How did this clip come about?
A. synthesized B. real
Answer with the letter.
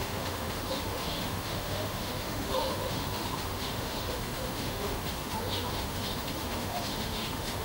A